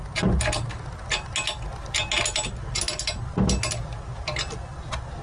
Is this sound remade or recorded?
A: recorded